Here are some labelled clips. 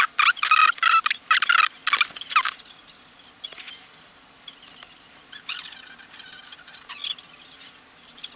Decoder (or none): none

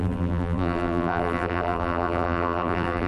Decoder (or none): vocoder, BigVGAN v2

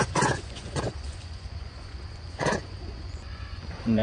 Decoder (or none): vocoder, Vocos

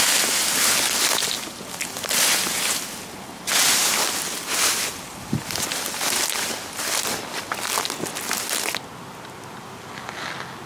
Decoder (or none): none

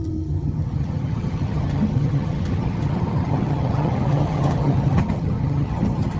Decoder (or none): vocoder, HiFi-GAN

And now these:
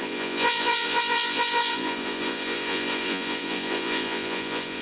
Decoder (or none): vocoder, Vocos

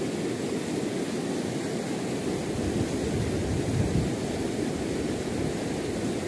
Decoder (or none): none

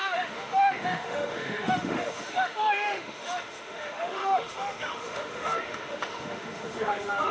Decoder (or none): autoencoder, DAC-VAE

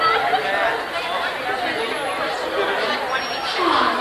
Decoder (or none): none